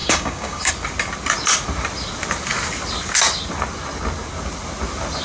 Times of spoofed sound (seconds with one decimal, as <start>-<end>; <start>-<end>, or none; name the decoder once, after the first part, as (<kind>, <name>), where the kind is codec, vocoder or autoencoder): 0.0-0.7 (codec, DAC)

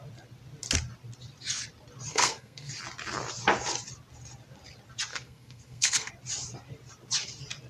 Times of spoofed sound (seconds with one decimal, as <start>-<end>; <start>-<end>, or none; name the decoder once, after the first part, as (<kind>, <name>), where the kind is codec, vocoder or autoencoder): 2.1-2.7 (codec, SNAC); 5.1-6.1

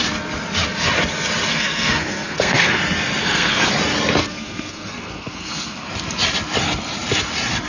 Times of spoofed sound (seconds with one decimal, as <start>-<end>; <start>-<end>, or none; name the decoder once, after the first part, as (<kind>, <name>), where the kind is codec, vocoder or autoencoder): 1.5-2.8 (codec, SNAC); 3.2-3.7; 4.2-5.9